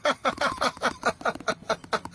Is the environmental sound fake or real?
real